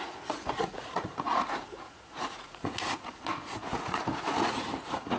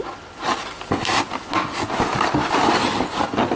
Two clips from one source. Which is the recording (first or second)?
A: second